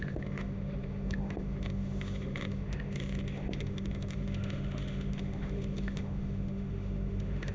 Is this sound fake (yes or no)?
yes